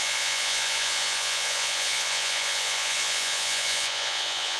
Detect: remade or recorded remade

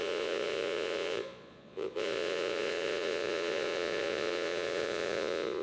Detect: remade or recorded remade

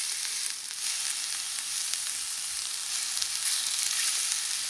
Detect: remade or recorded recorded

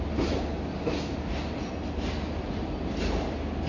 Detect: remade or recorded recorded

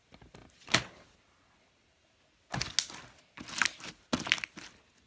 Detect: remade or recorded recorded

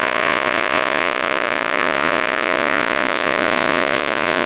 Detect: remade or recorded remade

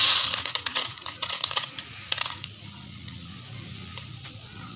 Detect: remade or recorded remade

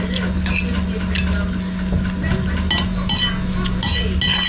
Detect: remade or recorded recorded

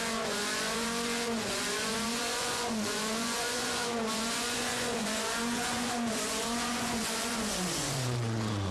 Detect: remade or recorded remade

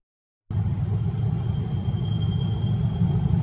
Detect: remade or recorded recorded